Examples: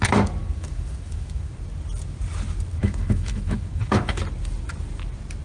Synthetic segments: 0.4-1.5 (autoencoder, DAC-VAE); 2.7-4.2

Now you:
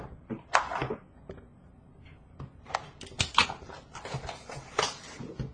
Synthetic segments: none

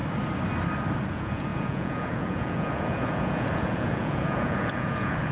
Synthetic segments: 1.1-5.3 (vocoder, Vocos)

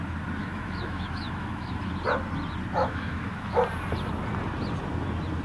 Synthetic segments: 0.4-1.8 (autoencoder, DAC-VAE); 2.8-3.6

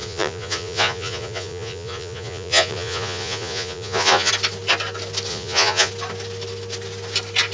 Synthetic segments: 0.0-4.3 (vocoder, Vocos); 5.3-5.9

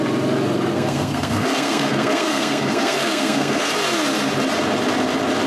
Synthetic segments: 0.7-3.7 (codec, SNAC)

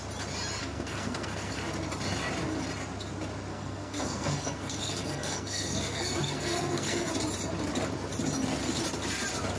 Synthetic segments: 0.6-1.6 (codec, SNAC); 3.5-7.1